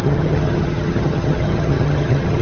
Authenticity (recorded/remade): remade